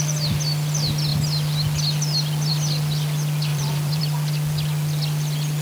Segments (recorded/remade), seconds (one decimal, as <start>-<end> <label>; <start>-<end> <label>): 0.0-3.5 recorded; 3.5-4.0 remade; 4.0-5.6 recorded